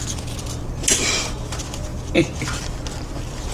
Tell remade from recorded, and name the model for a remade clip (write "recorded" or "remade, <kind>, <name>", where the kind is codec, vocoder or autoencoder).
recorded